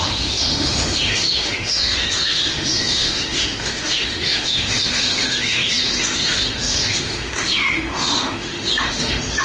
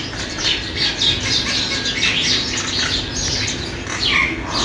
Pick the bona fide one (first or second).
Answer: second